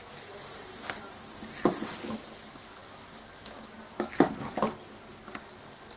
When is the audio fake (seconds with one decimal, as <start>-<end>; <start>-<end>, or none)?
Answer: none